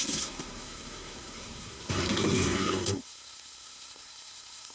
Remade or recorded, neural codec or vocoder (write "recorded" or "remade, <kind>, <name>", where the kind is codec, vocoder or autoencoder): remade, codec, SNAC